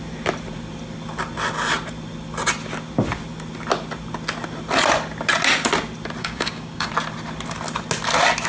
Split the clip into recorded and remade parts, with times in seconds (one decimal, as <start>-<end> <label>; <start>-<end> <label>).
0.0-6.2 recorded; 6.2-6.9 remade; 6.9-8.5 recorded